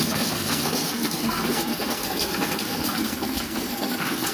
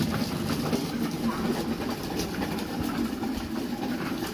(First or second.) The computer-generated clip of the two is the first